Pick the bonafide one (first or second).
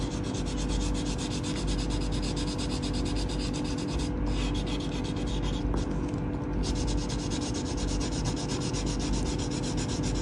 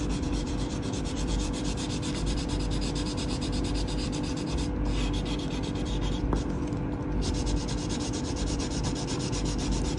first